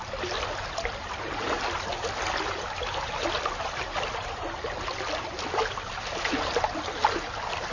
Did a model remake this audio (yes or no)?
no